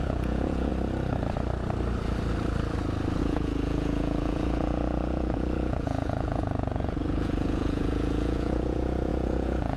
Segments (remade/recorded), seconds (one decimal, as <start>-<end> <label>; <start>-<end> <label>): 0.0-0.7 remade; 0.7-3.2 recorded; 3.2-9.8 remade